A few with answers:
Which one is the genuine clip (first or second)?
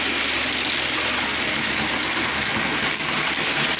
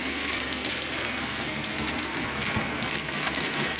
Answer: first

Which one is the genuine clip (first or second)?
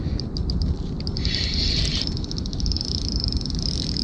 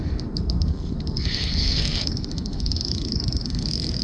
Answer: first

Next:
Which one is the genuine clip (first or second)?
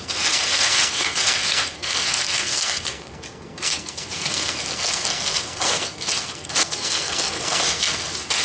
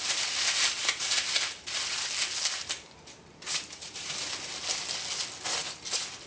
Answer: second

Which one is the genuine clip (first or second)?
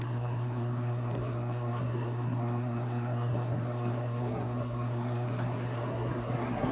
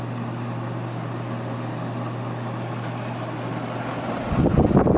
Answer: second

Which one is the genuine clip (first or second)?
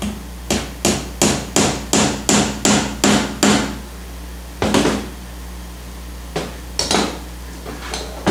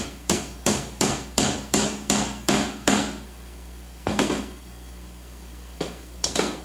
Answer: first